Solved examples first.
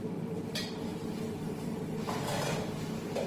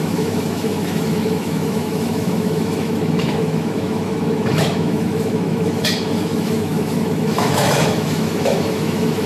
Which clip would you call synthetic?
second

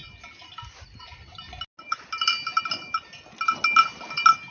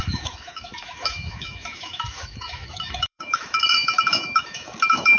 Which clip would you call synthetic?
second